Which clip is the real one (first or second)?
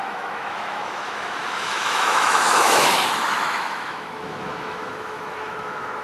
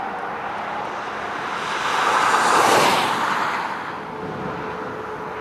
second